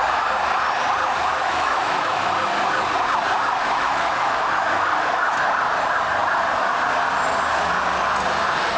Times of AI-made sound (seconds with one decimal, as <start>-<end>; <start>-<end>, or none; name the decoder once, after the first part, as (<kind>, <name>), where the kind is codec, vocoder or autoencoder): 1.3-2.3 (autoencoder, DAC-VAE); 3.6-5.5